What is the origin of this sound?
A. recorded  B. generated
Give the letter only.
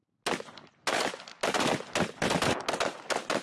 A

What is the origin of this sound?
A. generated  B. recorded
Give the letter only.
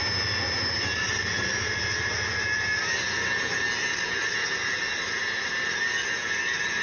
B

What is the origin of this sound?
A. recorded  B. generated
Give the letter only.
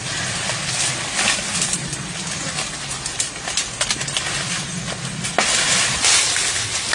A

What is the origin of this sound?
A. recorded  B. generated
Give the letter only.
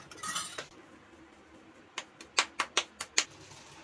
A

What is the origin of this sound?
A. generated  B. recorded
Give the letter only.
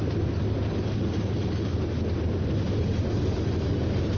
B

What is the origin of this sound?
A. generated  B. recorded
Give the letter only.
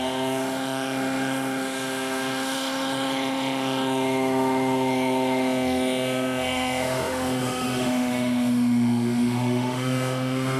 A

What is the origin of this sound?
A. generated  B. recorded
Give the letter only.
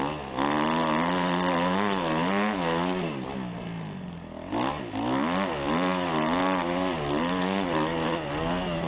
B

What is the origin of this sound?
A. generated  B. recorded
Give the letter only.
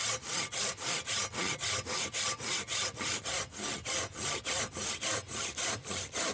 B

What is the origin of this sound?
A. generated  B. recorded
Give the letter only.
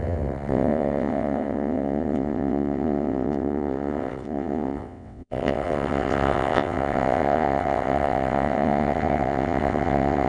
A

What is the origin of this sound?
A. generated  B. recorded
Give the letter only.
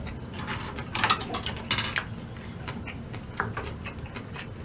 B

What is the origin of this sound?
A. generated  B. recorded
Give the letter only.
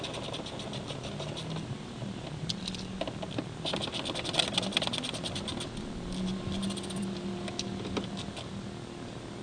B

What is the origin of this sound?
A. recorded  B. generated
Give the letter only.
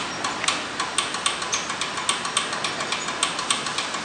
A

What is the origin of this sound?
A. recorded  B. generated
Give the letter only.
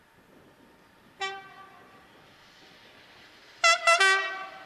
A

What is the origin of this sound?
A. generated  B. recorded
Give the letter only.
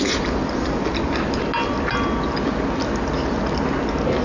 B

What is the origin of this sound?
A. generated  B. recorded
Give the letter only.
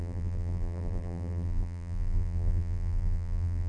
A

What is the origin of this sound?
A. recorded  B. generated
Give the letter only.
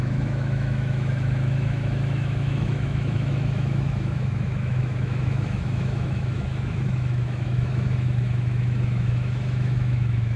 B